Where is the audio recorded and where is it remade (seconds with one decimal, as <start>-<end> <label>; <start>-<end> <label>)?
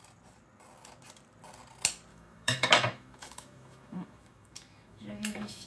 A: 0.0-2.1 recorded; 2.1-5.7 remade